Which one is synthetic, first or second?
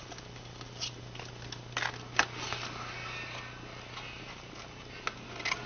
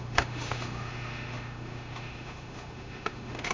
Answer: second